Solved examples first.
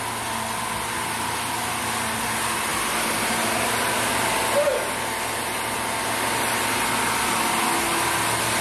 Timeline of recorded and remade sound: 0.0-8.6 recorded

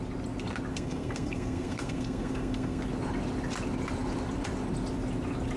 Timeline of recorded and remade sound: 0.0-0.7 recorded; 0.7-2.8 remade; 2.8-5.6 recorded

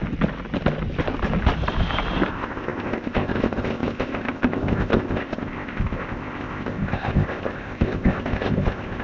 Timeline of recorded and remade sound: 0.0-2.3 recorded; 2.3-9.0 remade

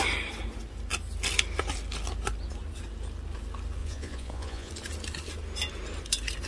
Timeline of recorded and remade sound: 0.0-3.8 recorded; 3.8-4.7 remade; 4.7-6.5 recorded